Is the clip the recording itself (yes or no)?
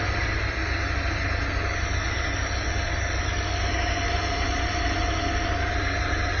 yes